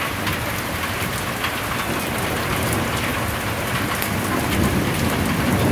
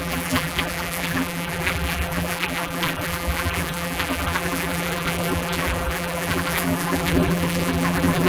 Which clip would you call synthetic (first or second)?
second